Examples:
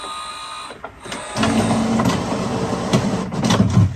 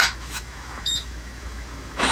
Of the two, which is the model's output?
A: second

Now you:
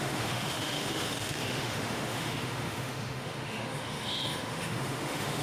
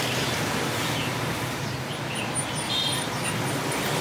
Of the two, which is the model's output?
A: first